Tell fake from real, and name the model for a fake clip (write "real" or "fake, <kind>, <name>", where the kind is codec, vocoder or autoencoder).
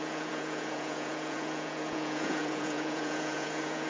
fake, vocoder, Vocos